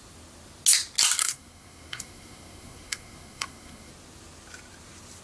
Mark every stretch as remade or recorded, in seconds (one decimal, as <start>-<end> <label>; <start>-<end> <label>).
0.0-1.2 recorded; 1.2-3.9 remade; 3.9-5.2 recorded